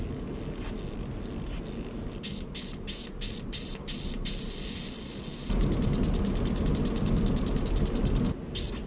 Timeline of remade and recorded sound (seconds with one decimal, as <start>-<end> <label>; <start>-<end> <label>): 0.0-8.9 recorded